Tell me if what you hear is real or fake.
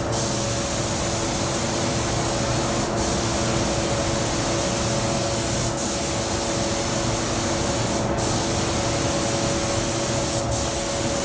real